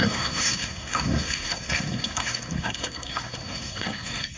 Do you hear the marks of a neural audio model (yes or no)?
yes